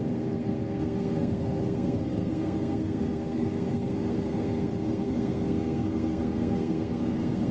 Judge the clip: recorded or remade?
remade